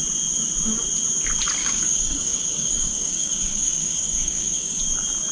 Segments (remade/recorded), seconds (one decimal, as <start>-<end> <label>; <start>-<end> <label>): 0.0-1.6 recorded; 1.6-4.8 remade; 4.8-5.3 recorded

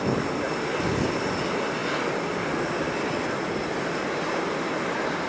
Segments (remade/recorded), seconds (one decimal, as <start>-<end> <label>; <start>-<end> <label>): 0.0-5.3 recorded

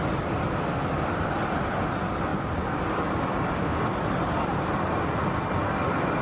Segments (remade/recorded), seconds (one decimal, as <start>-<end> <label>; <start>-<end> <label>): 0.0-6.2 recorded

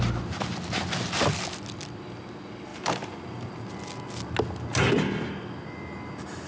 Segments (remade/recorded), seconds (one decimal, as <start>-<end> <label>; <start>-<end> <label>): 0.0-2.7 recorded; 2.7-3.6 remade; 3.6-6.5 recorded

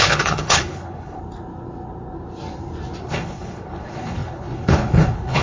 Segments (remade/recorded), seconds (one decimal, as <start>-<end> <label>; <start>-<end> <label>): 0.0-1.2 remade; 1.2-3.0 recorded; 3.0-5.4 remade

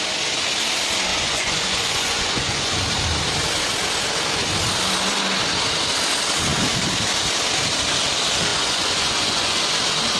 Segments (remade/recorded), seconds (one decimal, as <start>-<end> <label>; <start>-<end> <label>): 0.0-1.1 recorded; 1.1-2.8 remade; 2.8-8.5 recorded; 8.5-9.7 remade; 9.7-10.2 recorded

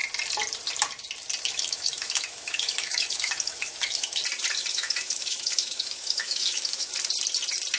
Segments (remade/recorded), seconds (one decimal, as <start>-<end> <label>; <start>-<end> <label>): 0.0-1.4 recorded; 1.4-4.2 remade; 4.2-4.7 recorded; 4.7-6.9 remade; 6.9-7.8 recorded